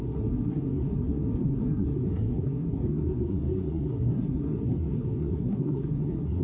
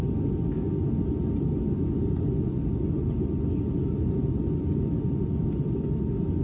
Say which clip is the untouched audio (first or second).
second